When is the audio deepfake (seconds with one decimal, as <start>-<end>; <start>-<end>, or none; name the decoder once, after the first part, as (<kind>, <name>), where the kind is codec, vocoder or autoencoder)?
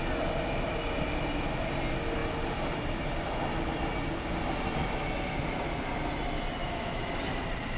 6.6-7.2 (autoencoder, DAC-VAE)